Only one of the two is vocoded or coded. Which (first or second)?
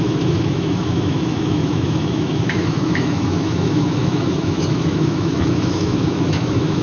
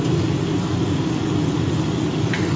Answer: first